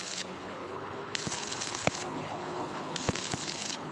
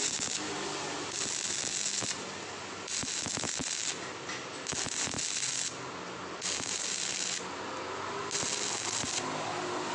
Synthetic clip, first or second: first